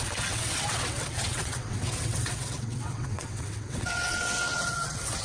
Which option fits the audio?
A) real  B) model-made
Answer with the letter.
B